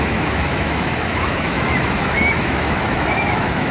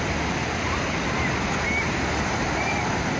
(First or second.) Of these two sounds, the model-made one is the first